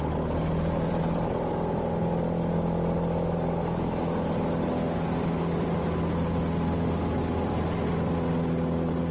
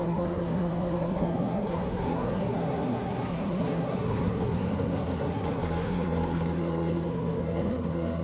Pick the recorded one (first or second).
first